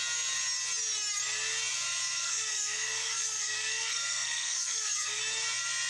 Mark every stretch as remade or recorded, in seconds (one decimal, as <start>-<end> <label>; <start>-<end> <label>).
0.0-2.2 recorded; 2.2-5.2 remade; 5.2-5.9 recorded